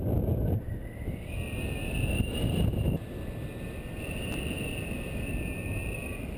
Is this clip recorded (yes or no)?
yes